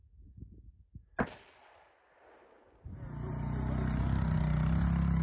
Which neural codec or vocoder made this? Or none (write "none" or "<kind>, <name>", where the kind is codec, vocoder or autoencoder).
none